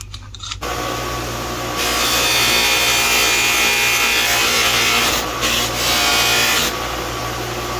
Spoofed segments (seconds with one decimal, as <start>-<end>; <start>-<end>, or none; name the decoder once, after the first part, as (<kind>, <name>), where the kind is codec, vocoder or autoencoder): 4.4-5.1 (vocoder, BigVGAN v2)

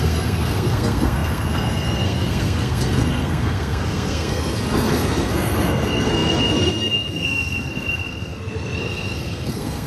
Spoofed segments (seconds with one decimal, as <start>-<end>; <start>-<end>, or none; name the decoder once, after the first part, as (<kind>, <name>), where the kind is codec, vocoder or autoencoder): 0.0-9.9 (codec, SNAC)